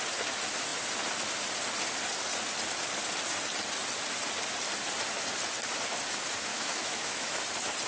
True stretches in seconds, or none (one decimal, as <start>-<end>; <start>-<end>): 0.0-6.5; 7.4-7.9